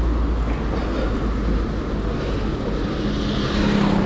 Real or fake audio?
real